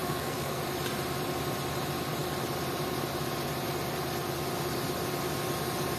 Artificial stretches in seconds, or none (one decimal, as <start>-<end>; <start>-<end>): 0.0-0.6